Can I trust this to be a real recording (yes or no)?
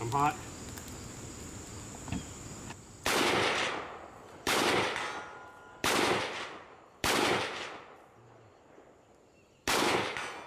yes